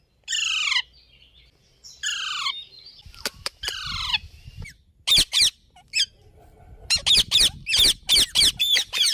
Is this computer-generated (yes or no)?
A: no